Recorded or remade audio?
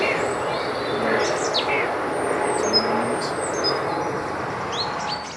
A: recorded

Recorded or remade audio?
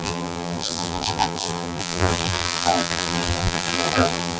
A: remade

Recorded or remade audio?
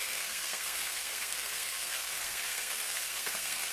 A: remade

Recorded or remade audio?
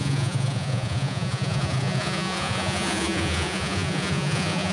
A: remade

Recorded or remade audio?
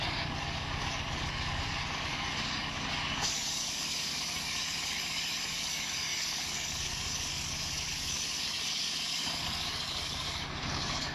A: remade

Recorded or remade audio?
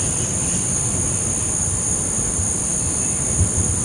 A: recorded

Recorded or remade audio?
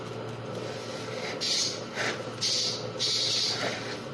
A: recorded